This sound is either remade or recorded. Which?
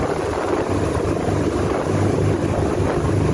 recorded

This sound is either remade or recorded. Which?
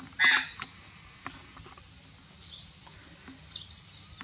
recorded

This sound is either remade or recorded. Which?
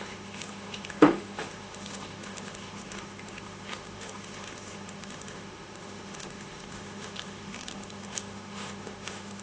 remade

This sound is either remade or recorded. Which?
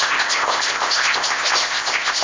remade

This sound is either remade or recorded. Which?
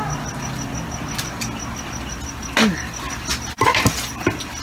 recorded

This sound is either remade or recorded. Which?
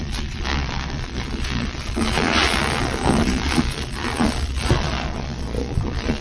remade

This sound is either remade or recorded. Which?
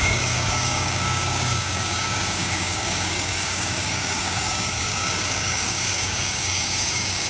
remade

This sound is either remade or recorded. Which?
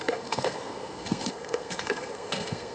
remade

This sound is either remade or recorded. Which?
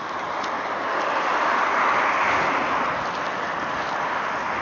recorded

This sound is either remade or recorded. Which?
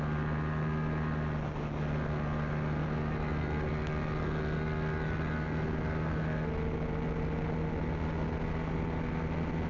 recorded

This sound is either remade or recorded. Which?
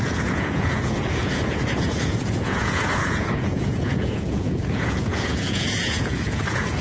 remade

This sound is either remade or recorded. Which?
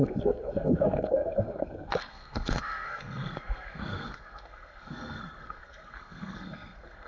remade